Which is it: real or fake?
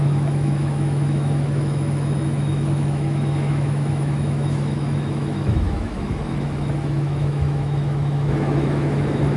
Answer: fake